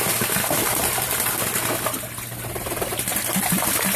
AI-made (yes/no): no